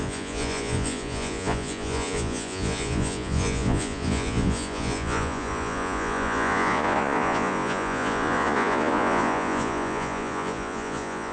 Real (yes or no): no